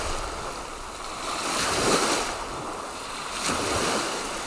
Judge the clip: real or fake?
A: real